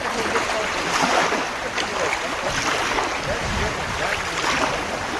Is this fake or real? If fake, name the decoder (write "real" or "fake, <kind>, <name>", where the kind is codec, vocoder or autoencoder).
real